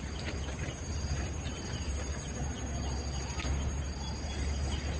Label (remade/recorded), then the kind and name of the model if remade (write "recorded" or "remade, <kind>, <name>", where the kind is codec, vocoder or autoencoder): recorded